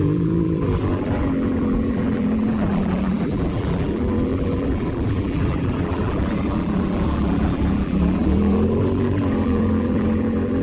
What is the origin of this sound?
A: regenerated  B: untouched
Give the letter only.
A